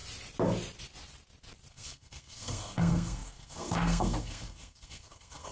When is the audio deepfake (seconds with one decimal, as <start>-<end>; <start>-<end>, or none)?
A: 1.7-5.5

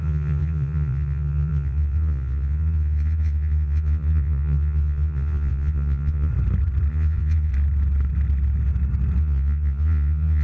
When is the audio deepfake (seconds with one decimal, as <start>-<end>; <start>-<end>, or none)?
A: 0.0-6.3; 6.9-7.5; 9.2-10.4

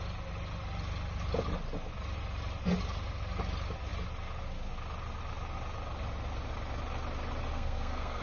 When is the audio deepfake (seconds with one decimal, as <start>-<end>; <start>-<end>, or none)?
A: 7.5-8.2

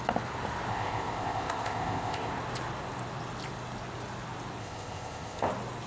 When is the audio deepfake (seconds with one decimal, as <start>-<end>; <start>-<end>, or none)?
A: 0.7-2.3; 4.6-5.5

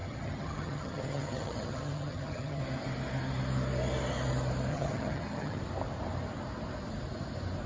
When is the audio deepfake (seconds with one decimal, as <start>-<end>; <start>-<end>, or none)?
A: 0.0-2.6; 4.7-5.6